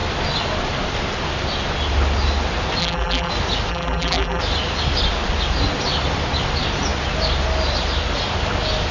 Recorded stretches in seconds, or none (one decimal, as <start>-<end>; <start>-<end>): 0.0-2.8; 3.3-3.7; 4.4-8.9